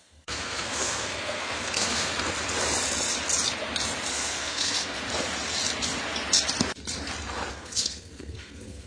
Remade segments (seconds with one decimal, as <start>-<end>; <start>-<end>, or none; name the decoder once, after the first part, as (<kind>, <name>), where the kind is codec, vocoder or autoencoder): 0.0-2.1 (codec, SNAC); 4.1-5.0; 7.5-8.9